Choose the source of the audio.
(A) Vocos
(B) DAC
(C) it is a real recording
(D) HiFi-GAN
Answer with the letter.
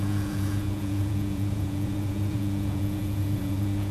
A